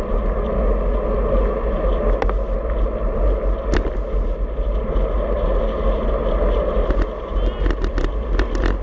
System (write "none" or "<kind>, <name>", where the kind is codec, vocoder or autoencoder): none